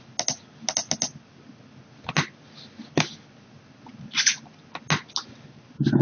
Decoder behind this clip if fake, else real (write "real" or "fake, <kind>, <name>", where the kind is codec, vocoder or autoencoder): real